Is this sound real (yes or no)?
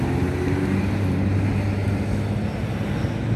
yes